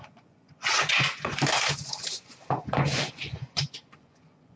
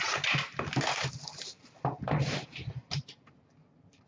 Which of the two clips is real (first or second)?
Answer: second